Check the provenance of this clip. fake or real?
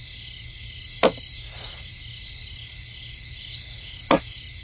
real